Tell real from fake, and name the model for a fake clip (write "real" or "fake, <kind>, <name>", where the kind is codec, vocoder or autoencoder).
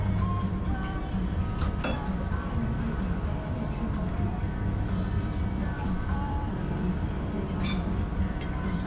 fake, vocoder, BigVGAN v2